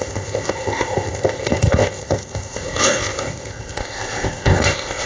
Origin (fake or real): fake